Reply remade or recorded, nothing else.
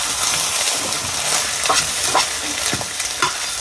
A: recorded